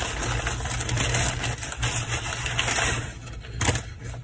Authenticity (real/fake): real